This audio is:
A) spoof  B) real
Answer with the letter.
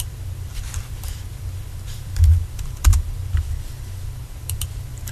A